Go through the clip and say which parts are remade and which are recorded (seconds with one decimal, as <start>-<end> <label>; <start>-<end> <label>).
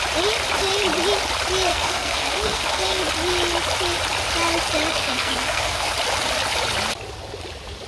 0.0-1.7 recorded; 1.7-3.0 remade; 3.0-4.9 recorded; 4.9-5.9 remade; 5.9-7.9 recorded